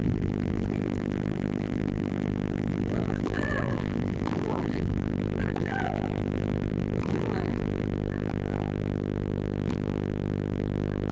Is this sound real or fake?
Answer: fake